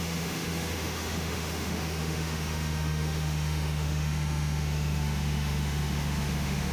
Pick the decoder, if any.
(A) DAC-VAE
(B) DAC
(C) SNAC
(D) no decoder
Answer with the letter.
A